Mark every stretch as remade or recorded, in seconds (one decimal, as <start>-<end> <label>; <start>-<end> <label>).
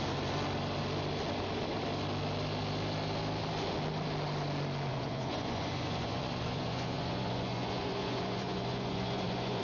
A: 0.0-4.9 recorded; 4.9-9.6 remade